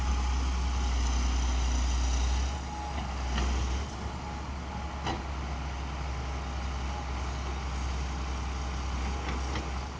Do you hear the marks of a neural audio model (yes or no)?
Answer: no